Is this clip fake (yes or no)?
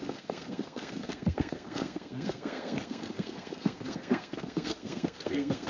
yes